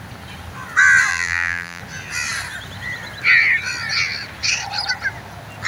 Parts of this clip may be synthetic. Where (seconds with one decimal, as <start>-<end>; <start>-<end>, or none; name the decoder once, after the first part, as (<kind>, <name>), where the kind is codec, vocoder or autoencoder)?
1.1-1.8 (vocoder, BigVGAN v2)

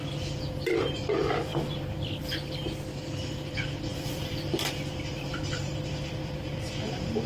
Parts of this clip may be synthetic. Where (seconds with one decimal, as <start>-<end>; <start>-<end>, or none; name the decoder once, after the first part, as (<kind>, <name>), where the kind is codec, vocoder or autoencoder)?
1.5-2.2 (vocoder, BigVGAN v2); 3.9-7.3

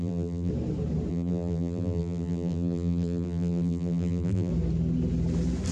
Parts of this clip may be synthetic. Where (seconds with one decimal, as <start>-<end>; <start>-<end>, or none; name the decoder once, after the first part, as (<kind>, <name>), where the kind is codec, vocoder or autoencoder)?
0.0-0.5 (vocoder, BigVGAN v2); 1.1-4.5

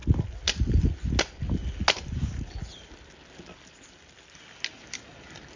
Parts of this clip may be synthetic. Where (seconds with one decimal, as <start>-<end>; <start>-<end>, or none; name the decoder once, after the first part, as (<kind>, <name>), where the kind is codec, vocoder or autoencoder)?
none

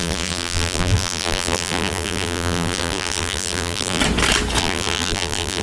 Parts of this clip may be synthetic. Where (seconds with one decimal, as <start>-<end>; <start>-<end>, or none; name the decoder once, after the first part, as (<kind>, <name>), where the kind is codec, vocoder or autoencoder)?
0.0-4.0 (vocoder, BigVGAN v2); 4.6-5.6

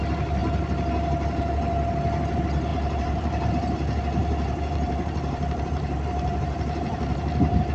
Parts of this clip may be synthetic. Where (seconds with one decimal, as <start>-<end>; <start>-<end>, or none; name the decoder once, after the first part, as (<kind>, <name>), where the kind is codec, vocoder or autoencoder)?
2.7-3.5 (vocoder, BigVGAN v2); 4.2-7.7

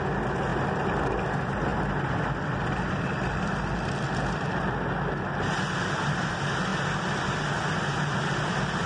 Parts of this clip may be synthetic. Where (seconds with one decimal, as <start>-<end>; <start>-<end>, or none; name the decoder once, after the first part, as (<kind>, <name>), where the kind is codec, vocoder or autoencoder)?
none

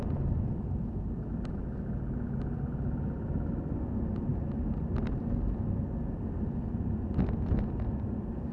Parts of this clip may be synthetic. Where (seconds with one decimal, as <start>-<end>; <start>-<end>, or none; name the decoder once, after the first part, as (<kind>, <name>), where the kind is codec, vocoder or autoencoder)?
none